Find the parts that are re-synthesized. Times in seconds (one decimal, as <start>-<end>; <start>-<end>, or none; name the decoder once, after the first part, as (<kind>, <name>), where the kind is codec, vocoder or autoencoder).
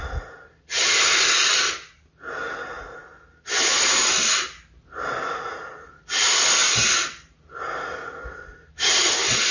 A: none